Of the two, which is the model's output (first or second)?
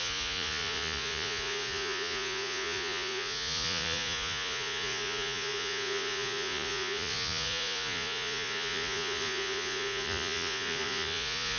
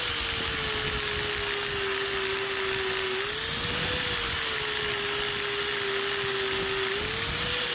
first